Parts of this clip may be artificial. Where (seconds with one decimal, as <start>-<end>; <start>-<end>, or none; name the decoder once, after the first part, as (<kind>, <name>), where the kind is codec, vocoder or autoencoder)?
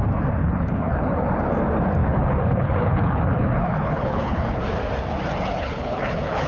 0.4-1.4 (codec, HILCodec); 2.0-4.6; 5.5-6.5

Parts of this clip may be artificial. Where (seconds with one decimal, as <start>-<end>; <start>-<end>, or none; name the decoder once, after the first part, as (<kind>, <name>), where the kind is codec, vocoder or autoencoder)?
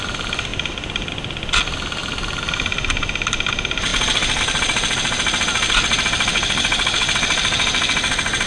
6.3-7.1 (codec, HILCodec)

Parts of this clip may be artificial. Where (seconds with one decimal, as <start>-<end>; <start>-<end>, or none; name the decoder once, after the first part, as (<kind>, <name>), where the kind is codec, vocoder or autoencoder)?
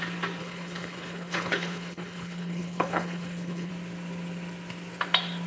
0.4-3.7 (codec, HILCodec)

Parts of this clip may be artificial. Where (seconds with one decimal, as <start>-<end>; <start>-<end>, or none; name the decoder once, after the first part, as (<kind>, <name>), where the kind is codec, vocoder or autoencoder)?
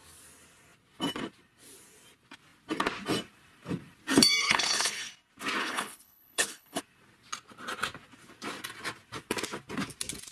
4.4-5.1 (codec, HILCodec); 5.6-6.8